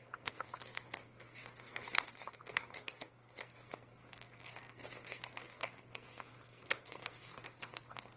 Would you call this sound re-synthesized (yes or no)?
yes